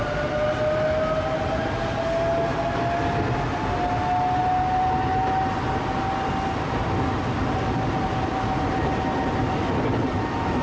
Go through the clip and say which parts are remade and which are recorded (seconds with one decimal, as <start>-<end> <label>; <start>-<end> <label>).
0.0-10.6 recorded